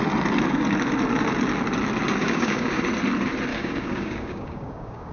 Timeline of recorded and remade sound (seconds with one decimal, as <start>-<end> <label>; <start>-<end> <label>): 0.0-2.2 recorded; 2.2-2.8 remade; 2.8-3.5 recorded; 3.5-5.1 remade